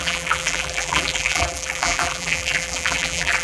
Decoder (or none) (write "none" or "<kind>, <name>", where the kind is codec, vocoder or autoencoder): vocoder, BigVGAN v2